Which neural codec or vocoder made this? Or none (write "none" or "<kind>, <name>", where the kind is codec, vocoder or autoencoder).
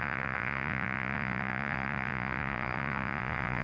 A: vocoder, Vocos